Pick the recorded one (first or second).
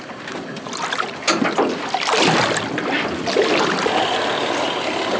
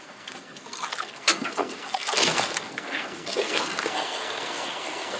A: first